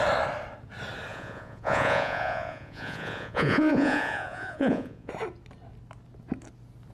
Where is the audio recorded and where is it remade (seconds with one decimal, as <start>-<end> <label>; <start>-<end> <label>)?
0.0-1.1 recorded; 1.1-5.1 remade; 5.1-6.9 recorded